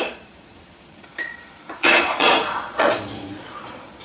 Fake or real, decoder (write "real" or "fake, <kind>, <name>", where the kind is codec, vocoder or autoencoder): fake, vocoder, Vocos